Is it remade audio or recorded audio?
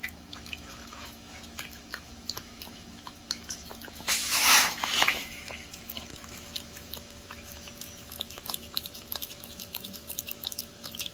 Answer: remade